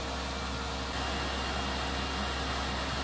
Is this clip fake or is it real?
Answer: real